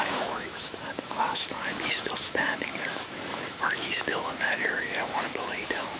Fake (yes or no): yes